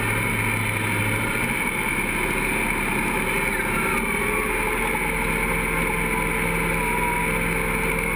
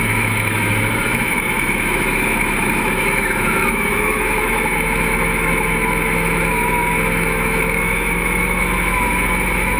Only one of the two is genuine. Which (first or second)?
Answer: first